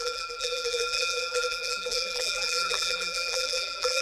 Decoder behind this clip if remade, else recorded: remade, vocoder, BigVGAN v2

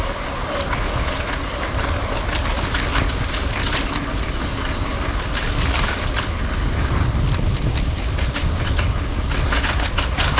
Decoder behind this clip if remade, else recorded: recorded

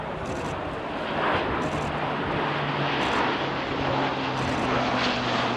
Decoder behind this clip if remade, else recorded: recorded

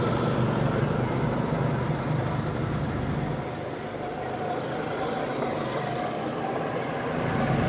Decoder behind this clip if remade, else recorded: recorded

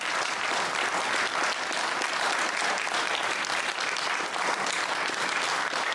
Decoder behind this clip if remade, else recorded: recorded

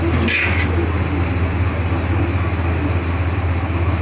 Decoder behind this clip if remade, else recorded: recorded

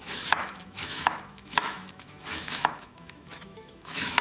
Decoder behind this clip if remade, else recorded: remade, autoencoder, DAC-VAE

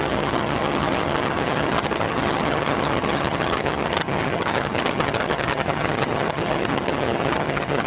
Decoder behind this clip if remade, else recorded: remade, vocoder, HiFi-GAN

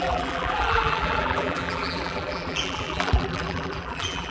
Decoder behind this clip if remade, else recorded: remade, vocoder, BigVGAN v2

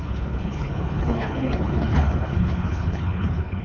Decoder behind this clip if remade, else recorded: remade, codec, HILCodec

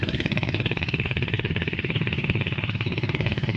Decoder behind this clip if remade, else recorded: remade, codec, SNAC